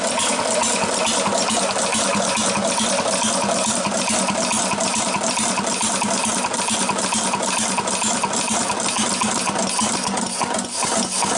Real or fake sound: real